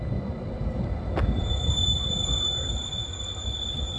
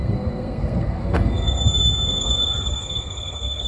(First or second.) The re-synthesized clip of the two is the second